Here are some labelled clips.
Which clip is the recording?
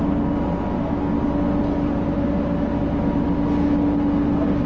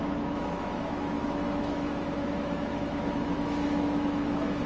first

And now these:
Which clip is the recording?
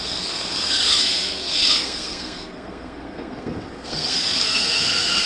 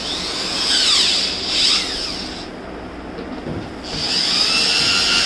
second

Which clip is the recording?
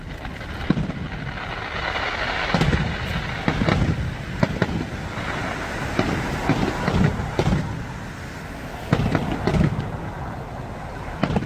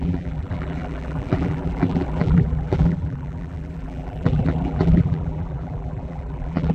first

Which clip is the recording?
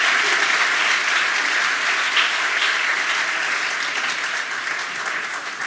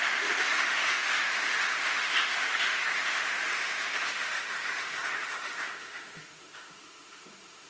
first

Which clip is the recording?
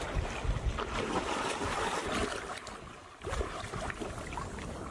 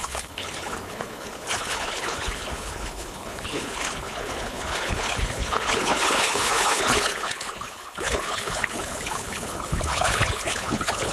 first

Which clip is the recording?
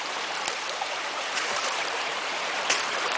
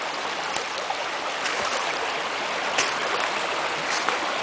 second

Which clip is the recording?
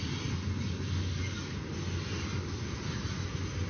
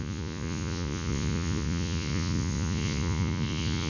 first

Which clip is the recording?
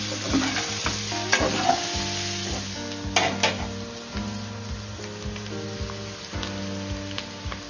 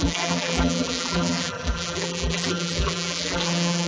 first